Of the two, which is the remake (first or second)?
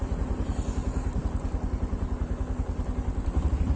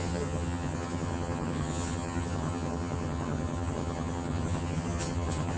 second